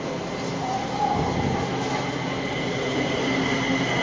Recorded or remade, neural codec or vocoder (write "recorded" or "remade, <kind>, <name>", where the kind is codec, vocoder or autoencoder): recorded